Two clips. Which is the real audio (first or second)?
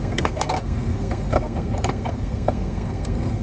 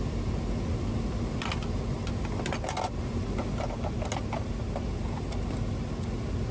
second